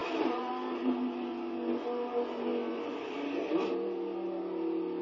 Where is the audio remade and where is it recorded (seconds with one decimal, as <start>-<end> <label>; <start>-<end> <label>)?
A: 0.0-0.5 remade; 0.5-5.0 recorded